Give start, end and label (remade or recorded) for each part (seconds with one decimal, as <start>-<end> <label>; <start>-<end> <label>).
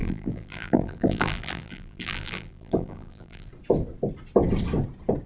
0.0-3.5 remade; 3.5-5.3 recorded